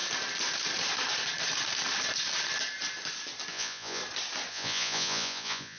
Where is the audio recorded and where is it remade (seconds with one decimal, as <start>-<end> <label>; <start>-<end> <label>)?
0.0-3.5 recorded; 3.5-4.0 remade; 4.0-4.5 recorded; 4.5-5.8 remade

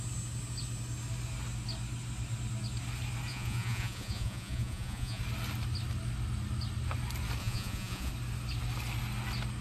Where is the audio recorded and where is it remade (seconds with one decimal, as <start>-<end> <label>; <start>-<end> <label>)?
0.0-3.3 recorded; 3.3-5.2 remade; 5.2-7.4 recorded; 7.4-8.1 remade; 8.1-9.6 recorded

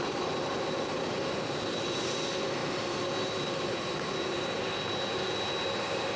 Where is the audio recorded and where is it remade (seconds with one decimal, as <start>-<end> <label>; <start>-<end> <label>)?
0.0-6.2 recorded

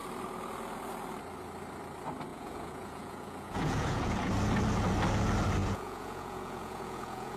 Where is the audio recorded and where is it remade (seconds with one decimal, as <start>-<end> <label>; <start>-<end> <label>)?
0.0-2.3 recorded; 2.3-4.3 remade; 4.3-5.6 recorded; 5.6-7.4 remade